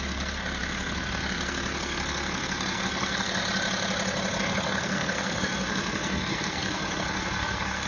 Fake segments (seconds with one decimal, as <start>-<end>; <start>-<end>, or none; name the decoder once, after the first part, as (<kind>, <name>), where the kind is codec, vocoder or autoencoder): 0.0-3.4 (codec, SNAC); 4.4-7.9